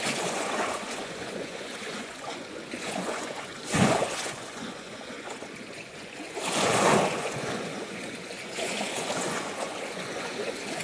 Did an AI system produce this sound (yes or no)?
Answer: yes